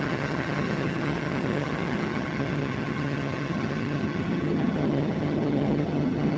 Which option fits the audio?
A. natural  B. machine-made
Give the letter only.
B